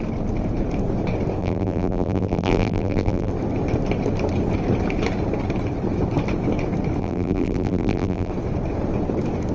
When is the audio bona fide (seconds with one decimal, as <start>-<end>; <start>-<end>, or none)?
0.0-1.4; 3.3-7.0; 8.3-9.5